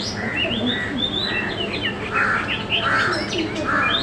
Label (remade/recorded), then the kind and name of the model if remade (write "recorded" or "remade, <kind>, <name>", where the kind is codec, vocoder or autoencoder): recorded